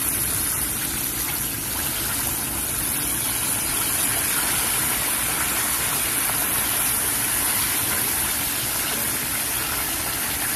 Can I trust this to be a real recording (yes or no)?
yes